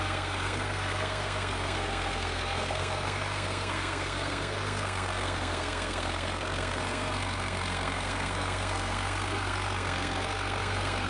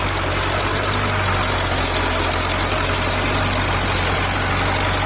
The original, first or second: second